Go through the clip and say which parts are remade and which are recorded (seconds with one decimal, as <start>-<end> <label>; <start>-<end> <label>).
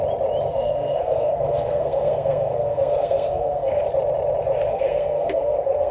0.0-0.5 recorded; 0.5-3.8 remade; 3.8-4.7 recorded; 4.7-5.9 remade